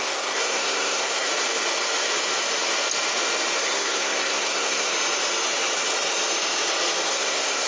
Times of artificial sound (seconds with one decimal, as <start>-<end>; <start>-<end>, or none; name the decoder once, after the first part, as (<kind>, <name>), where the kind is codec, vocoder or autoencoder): 0.0-1.3 (codec, SNAC); 3.6-4.9; 7.1-7.7